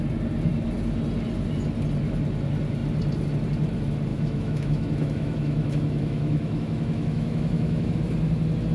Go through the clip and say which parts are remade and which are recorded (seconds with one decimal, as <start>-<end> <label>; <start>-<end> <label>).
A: 0.0-4.1 recorded; 4.1-8.0 remade; 8.0-8.7 recorded